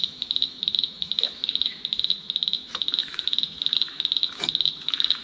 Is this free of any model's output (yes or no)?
no